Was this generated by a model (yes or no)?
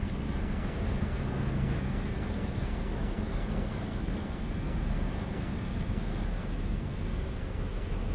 yes